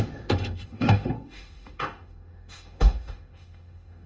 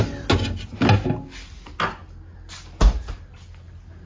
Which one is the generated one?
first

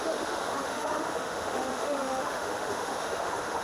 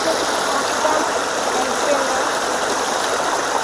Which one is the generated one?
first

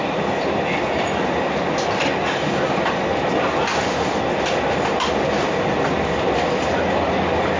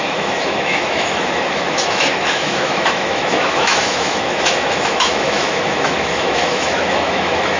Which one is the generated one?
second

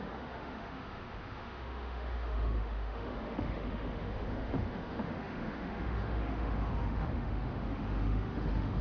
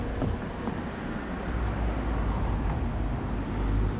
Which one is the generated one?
first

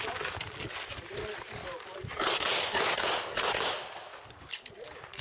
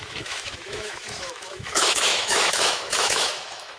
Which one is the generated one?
second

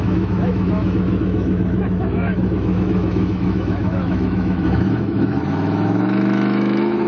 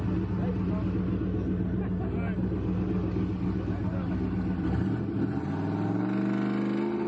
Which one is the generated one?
first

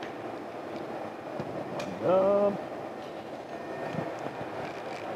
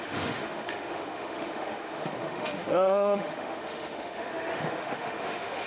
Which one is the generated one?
second